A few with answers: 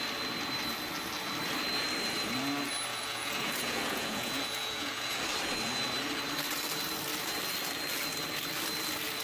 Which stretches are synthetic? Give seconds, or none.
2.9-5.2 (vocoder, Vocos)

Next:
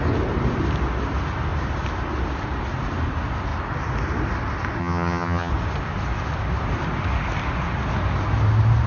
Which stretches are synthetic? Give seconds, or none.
4.8-5.5 (vocoder, HiFi-GAN)

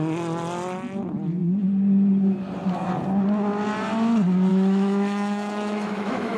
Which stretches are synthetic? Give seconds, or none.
4.5-6.4 (autoencoder, DAC-VAE)

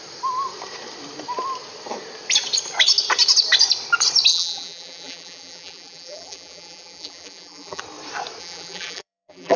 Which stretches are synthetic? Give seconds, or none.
4.3-7.8 (vocoder, BigVGAN v2); 8.4-9.6

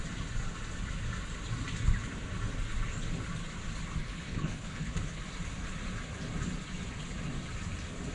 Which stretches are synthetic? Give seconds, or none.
4.0-5.2 (codec, HILCodec)

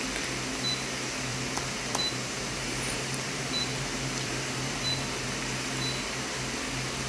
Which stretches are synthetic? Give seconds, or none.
1.3-5.3 (vocoder, BigVGAN v2)

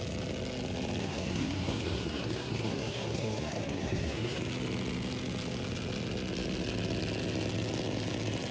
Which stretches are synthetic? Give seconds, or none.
1.0-4.4 (codec, SNAC)

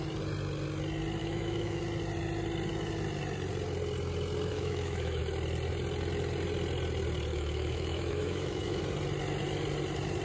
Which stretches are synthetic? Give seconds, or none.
1.2-1.8 (autoencoder, DAC-VAE); 4.5-5.2; 7.3-8.8